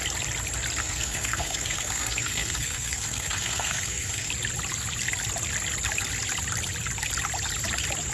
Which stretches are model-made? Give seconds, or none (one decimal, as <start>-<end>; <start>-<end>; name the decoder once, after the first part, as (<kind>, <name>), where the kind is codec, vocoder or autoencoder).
0.8-4.3 (codec, SNAC)